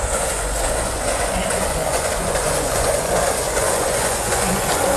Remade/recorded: remade